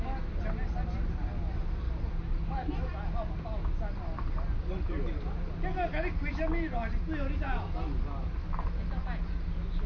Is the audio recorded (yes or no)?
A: yes